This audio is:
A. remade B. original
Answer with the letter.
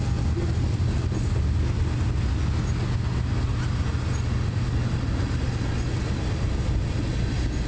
B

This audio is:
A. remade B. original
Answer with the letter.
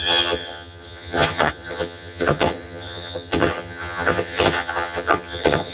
A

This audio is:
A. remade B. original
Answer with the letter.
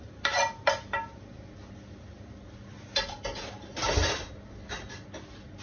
B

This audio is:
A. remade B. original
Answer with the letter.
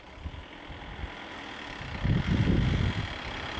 B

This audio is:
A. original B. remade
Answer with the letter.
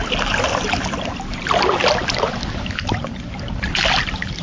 A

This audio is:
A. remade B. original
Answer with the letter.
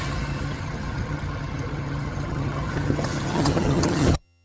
A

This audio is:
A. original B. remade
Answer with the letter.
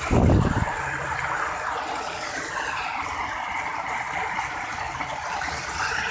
A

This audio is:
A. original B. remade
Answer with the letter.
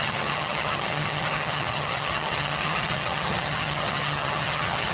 B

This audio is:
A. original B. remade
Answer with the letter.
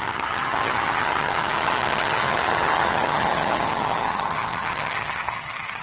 B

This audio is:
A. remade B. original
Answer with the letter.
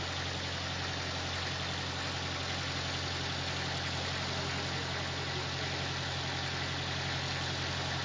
B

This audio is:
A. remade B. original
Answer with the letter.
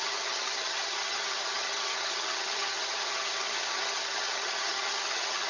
A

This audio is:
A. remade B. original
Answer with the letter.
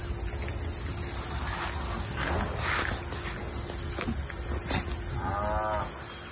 B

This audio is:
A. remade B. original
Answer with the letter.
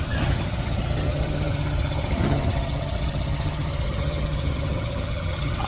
A